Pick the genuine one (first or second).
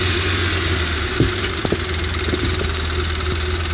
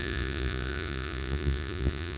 first